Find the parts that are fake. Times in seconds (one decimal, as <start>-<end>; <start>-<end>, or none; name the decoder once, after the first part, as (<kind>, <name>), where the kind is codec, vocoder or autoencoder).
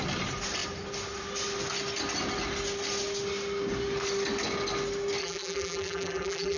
5.2-6.6 (vocoder, BigVGAN v2)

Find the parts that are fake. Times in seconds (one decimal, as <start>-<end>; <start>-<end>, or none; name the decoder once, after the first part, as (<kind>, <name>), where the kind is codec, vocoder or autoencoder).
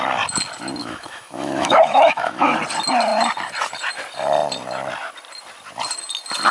0.8-2.5 (autoencoder, DAC-VAE)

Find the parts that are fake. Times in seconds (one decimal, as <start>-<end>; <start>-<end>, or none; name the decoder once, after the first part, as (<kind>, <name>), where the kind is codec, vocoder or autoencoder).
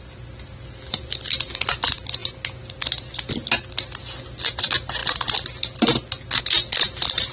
none